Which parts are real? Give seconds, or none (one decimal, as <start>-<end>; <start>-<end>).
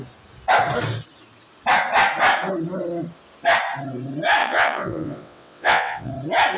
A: 0.0-4.4; 6.1-6.6